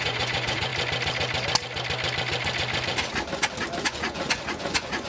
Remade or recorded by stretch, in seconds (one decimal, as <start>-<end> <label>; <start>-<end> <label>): 0.0-0.7 remade; 0.7-3.8 recorded; 3.8-5.1 remade